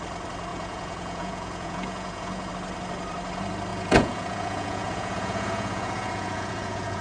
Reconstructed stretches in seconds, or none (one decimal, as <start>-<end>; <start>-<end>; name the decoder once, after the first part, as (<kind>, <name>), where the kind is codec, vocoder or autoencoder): 0.5-2.5 (vocoder, Vocos); 3.7-7.0